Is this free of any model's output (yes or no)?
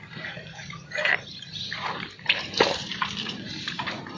no